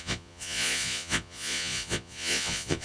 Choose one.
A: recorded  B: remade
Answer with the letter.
B